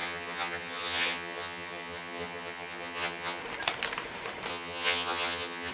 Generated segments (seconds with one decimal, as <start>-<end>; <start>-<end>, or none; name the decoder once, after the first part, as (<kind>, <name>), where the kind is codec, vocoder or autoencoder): 0.0-3.4 (vocoder, HiFi-GAN); 4.5-5.7